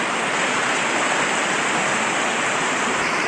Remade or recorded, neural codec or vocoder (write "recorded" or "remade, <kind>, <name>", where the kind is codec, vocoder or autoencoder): recorded